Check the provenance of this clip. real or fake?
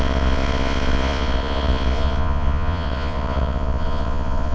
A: fake